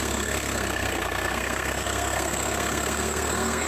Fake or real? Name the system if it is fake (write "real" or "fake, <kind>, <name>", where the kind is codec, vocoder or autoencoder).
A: fake, codec, SNAC